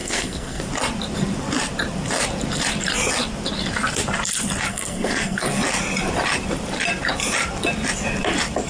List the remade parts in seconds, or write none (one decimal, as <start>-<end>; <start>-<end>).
0.0-0.6; 4.7-5.6